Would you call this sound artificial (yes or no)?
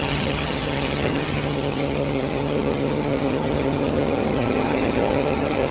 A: yes